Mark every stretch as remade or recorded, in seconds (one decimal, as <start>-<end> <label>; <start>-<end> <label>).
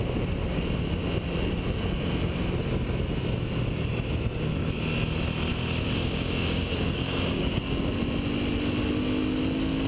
0.0-5.5 recorded; 5.5-7.6 remade; 7.6-9.9 recorded